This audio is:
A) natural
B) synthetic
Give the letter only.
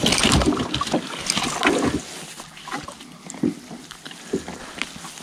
A